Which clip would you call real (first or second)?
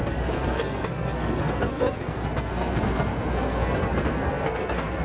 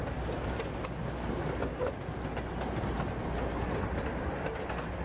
second